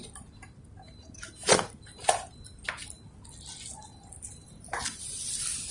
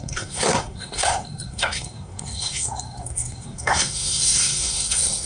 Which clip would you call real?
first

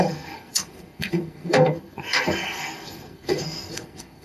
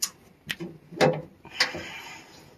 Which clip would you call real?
second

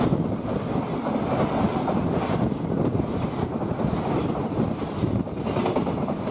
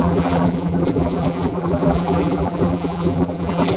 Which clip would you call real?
first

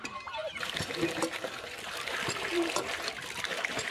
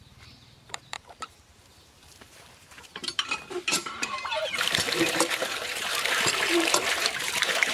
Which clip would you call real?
first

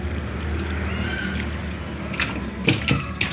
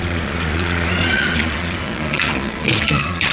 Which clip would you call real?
first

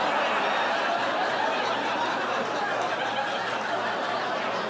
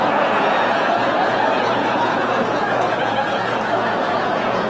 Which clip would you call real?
first